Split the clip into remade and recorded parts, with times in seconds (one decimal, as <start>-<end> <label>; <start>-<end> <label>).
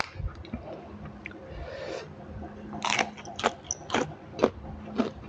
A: 0.0-5.3 recorded